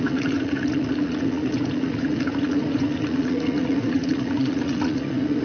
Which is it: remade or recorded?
remade